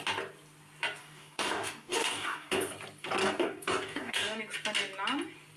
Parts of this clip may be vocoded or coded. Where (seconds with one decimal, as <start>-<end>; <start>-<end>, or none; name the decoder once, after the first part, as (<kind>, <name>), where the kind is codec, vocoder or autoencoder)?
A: 1.0-2.7 (codec, DAC); 3.2-4.4